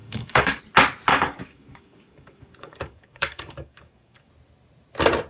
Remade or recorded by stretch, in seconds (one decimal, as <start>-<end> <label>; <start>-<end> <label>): 0.0-0.6 remade; 0.6-1.1 recorded; 1.1-4.3 remade; 4.3-5.3 recorded